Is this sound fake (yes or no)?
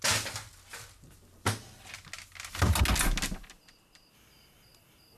no